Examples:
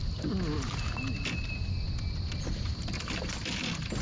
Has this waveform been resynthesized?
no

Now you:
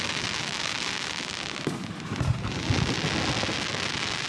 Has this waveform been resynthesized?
no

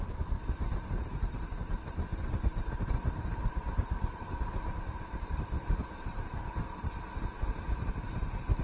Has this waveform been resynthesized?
yes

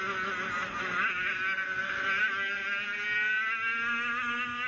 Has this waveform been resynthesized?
no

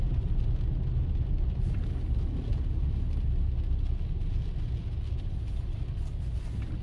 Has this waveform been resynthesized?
no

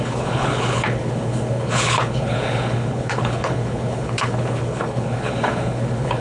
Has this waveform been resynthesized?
yes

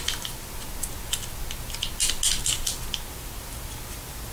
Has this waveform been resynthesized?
no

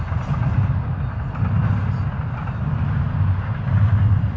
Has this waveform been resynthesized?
no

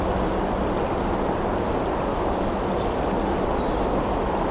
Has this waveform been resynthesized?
no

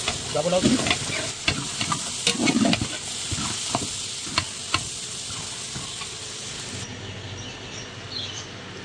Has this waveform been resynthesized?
no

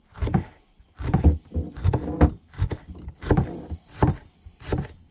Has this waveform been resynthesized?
no